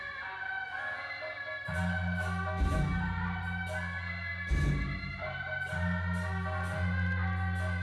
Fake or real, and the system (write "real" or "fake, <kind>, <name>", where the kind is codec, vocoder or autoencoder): real